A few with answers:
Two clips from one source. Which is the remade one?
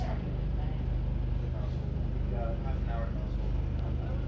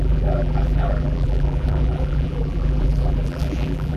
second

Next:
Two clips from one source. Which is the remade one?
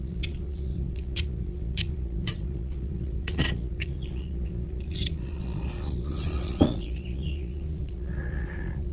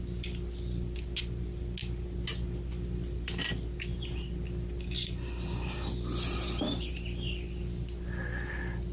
first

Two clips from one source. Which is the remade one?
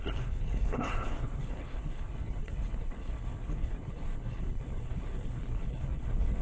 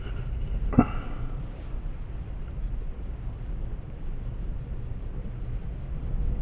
first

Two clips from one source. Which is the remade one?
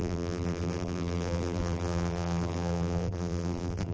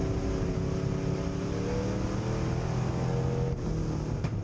first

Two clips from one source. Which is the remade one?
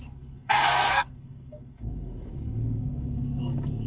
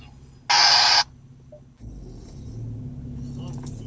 first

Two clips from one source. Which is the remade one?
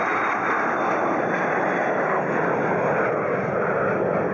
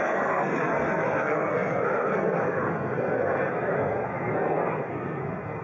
second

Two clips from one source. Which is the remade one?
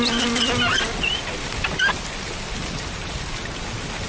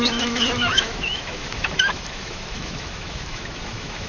second